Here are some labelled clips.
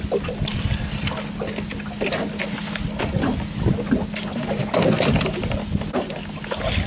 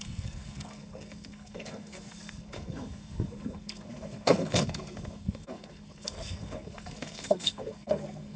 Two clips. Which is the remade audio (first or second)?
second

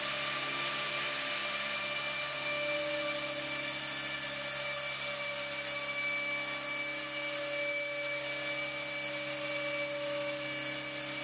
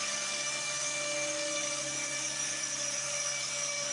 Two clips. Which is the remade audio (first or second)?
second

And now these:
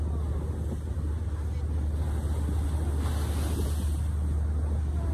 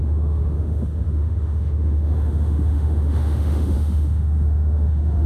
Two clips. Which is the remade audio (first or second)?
second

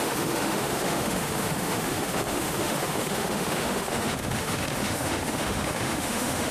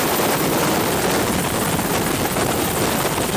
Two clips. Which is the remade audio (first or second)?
first